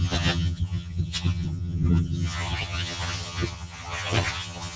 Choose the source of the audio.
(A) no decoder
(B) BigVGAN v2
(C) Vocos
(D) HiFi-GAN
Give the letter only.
D